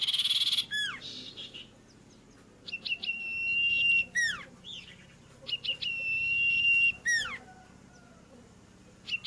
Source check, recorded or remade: recorded